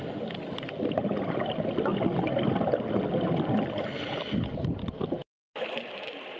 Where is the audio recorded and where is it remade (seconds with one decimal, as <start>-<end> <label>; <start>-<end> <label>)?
0.0-6.4 recorded